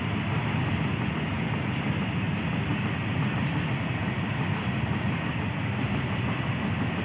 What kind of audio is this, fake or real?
real